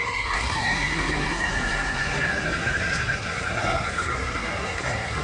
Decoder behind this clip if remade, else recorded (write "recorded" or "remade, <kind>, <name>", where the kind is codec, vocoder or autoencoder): remade, codec, SNAC